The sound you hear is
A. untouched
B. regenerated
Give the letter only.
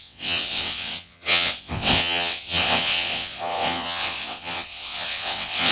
B